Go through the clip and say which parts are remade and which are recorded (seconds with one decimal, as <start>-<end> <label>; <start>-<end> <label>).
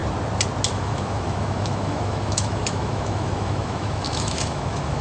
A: 0.0-0.7 recorded; 0.7-5.0 remade